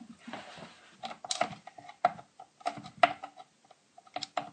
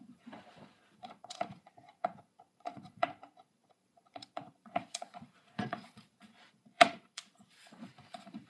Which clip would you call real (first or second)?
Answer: first